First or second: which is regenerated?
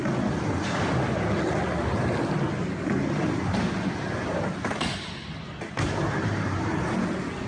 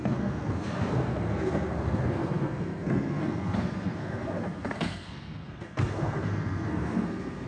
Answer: second